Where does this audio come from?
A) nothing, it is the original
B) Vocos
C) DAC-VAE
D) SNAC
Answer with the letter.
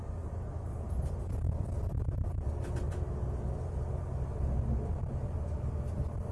A